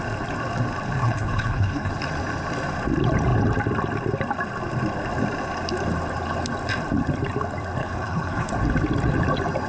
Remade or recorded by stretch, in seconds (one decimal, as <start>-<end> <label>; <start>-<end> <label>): 0.0-1.0 recorded; 1.0-1.9 remade; 1.9-7.8 recorded; 7.8-8.5 remade; 8.5-9.7 recorded